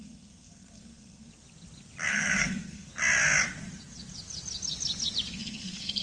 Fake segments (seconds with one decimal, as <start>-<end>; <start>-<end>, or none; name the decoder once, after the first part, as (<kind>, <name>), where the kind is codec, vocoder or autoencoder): 0.0-1.3 (codec, SNAC); 2.1-2.9; 5.3-6.0